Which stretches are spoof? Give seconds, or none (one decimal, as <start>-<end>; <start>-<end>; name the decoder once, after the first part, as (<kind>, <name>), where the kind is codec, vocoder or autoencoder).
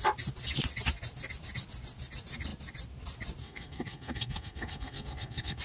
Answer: 3.4-5.6 (codec, SNAC)